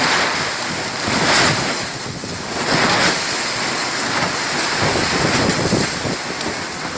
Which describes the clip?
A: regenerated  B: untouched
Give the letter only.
B